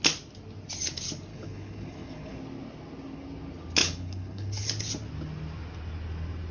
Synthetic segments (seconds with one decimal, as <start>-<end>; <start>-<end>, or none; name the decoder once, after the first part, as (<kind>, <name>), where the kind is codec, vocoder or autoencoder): 1.3-2.4 (codec, HILCodec); 3.8-4.7